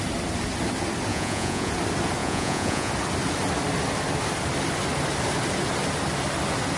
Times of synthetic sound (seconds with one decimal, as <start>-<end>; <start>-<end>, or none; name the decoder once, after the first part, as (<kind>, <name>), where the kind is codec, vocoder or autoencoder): 1.1-1.7 (vocoder, Vocos); 2.2-2.9